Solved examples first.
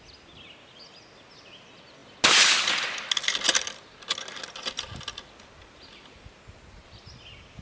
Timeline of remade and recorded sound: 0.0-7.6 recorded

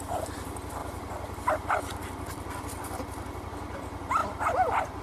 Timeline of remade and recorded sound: 0.0-0.8 recorded; 0.8-3.8 remade; 3.8-4.2 recorded; 4.2-5.0 remade

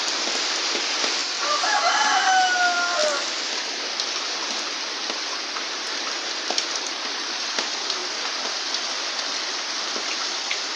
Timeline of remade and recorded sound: 0.0-10.8 recorded

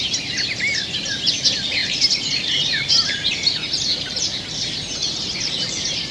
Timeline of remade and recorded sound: 0.0-6.1 remade